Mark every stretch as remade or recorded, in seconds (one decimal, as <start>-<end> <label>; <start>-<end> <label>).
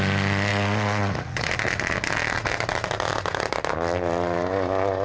0.0-0.5 recorded; 0.5-1.5 remade; 1.5-5.0 recorded